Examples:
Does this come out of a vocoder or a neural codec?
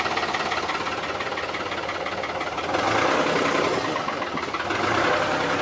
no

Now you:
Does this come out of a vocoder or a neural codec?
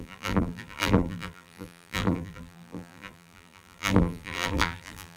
yes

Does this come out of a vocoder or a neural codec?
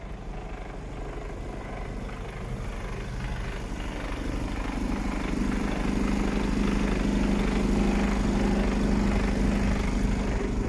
no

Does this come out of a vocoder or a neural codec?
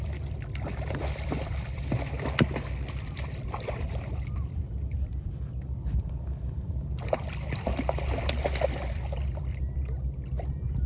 yes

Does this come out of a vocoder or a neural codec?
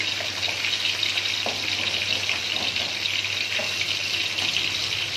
no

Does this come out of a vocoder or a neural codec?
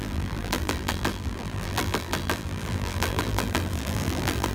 yes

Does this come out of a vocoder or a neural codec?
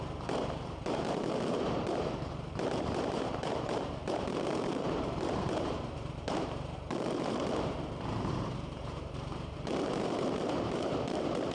yes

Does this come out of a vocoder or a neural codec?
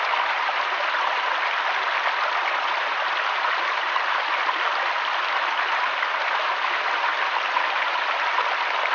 no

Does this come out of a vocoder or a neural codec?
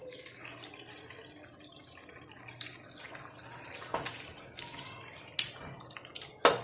no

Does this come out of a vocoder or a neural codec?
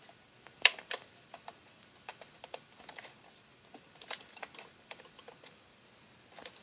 yes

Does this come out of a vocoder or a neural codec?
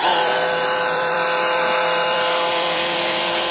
yes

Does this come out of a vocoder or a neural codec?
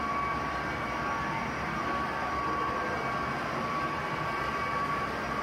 no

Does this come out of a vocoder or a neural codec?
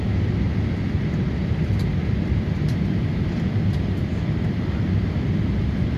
yes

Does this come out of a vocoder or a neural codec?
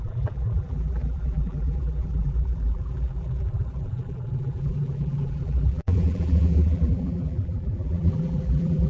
yes